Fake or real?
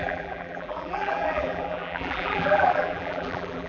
fake